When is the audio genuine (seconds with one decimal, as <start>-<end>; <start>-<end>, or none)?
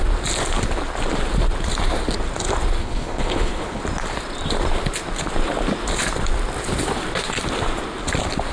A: 0.0-2.8; 3.8-8.5